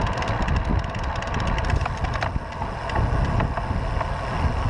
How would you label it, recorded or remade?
recorded